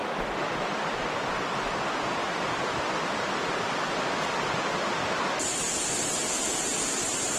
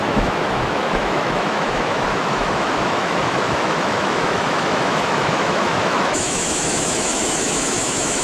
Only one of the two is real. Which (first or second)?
first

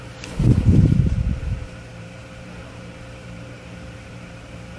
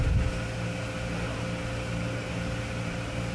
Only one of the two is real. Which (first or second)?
second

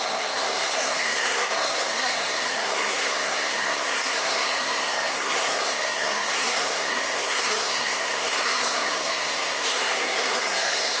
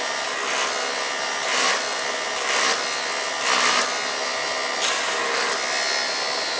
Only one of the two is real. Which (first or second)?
second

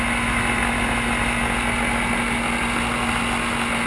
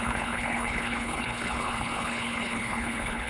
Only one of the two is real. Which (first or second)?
first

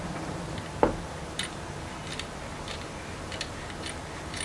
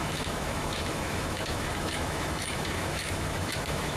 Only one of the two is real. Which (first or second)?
first